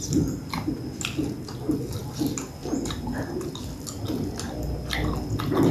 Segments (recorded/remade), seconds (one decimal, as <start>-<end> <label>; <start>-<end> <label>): 0.0-5.7 recorded